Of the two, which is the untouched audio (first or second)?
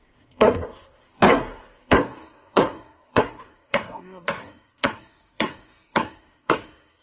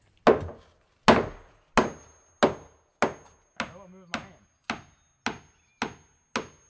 second